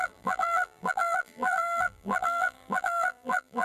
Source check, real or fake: fake